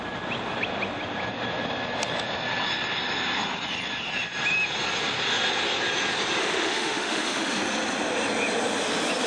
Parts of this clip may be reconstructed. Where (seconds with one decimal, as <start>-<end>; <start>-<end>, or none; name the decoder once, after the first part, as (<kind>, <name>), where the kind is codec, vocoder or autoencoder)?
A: 6.4-7.6 (autoencoder, DAC-VAE)